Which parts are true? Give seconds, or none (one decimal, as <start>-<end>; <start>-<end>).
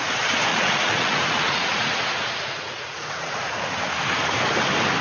0.0-0.5; 3.5-5.0